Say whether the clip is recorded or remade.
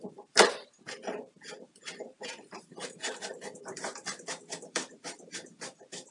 remade